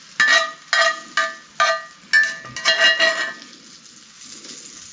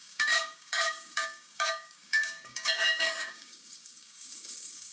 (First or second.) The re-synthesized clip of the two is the second